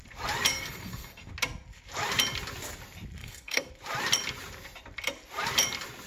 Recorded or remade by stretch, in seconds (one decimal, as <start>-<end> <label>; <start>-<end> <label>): 0.0-0.5 recorded; 0.5-1.3 remade; 1.3-3.2 recorded; 3.2-3.7 remade; 3.7-6.1 recorded